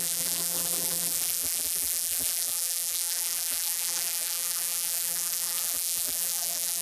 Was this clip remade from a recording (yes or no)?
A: yes